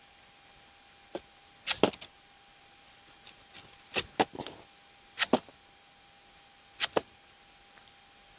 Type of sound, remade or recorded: recorded